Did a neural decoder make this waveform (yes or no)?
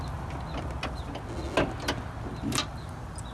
no